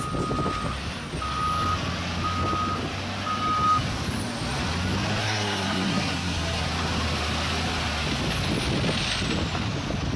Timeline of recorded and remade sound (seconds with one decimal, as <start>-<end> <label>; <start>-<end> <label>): 0.0-5.2 recorded; 5.2-6.7 remade; 6.7-10.2 recorded